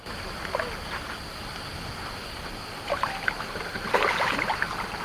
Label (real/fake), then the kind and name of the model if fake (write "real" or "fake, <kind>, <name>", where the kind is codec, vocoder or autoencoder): real